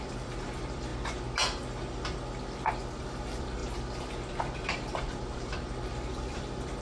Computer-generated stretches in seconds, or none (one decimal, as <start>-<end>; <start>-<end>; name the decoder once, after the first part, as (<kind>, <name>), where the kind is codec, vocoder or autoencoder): 0.0-0.9 (vocoder, BigVGAN v2); 2.7-6.8